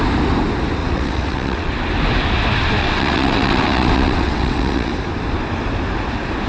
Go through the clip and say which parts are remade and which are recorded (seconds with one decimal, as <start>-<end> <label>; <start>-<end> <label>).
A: 0.0-0.8 recorded; 0.8-1.7 remade; 1.7-2.8 recorded; 2.8-4.9 remade; 4.9-6.5 recorded